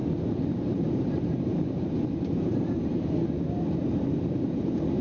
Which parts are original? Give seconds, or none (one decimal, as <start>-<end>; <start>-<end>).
0.0-0.5

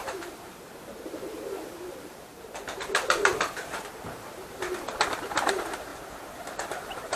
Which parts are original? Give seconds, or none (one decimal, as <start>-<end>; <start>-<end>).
5.9-6.4

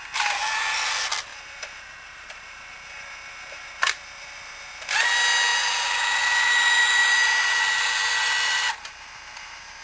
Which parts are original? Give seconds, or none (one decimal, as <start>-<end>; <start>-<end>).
0.0-1.3; 2.7-9.8

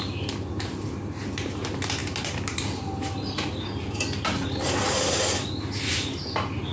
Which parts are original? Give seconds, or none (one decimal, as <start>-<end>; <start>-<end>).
0.0-6.7